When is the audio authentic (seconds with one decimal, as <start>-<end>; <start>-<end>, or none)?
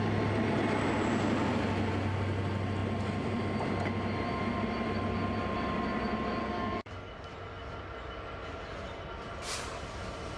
0.0-6.4; 6.9-10.4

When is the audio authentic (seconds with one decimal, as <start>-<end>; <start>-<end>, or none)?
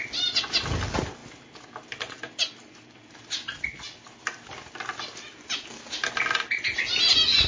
0.0-7.5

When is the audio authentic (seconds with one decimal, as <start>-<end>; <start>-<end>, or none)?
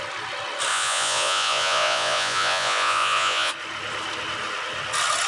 0.0-0.7; 3.5-5.3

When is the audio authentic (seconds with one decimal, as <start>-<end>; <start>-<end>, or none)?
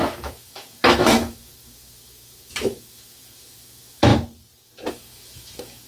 4.1-4.9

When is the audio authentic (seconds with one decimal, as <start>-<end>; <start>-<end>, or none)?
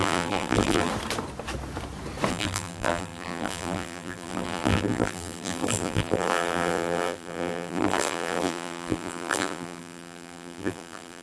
0.9-2.3